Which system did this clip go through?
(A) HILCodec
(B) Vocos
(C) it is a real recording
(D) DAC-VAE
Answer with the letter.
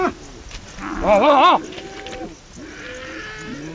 C